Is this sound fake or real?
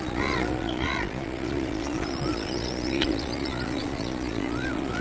fake